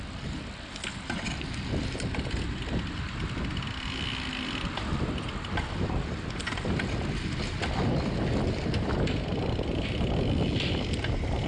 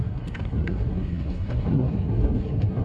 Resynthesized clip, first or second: second